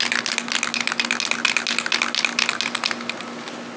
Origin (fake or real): real